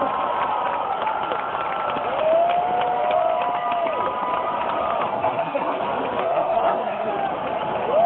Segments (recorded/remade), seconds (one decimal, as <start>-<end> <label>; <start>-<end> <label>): 0.0-5.1 recorded; 5.1-5.8 remade; 5.8-6.2 recorded; 6.2-7.1 remade; 7.1-8.1 recorded